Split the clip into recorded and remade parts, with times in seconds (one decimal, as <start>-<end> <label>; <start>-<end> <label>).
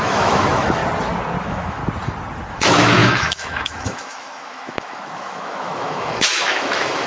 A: 0.0-0.8 remade; 0.8-1.4 recorded; 1.4-1.8 remade; 1.8-2.5 recorded; 2.5-7.1 remade